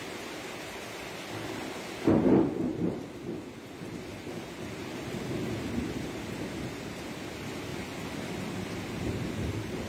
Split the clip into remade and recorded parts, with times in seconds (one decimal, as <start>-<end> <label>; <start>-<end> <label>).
0.0-4.1 recorded; 4.1-5.3 remade; 5.3-9.9 recorded